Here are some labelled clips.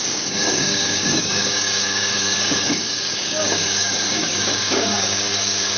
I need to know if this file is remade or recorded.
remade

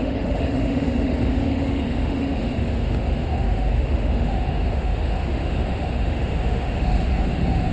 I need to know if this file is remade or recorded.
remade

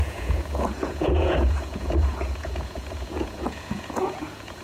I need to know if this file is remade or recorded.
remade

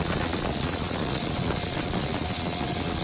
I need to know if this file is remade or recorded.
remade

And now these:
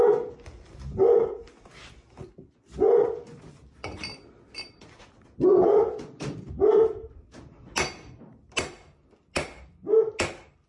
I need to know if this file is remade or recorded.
recorded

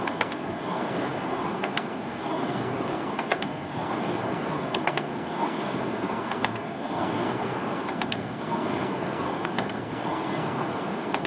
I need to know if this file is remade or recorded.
remade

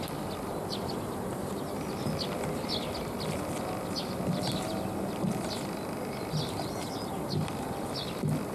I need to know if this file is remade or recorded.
recorded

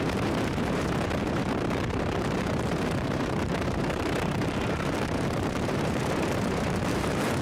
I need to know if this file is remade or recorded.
remade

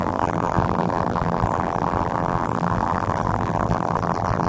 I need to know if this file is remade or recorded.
remade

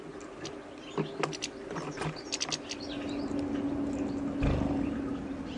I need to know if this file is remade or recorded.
recorded